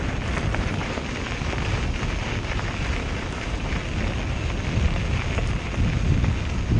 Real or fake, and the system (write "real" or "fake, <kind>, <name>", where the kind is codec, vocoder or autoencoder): real